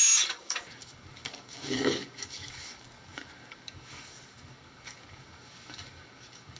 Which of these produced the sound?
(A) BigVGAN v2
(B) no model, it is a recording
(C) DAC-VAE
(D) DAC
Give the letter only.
D